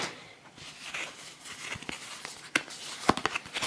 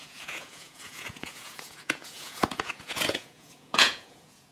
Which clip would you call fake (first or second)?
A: second